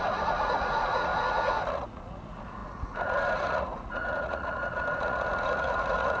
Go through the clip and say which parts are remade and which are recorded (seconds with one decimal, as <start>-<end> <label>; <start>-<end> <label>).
0.0-1.1 remade; 1.1-1.7 recorded; 1.7-6.2 remade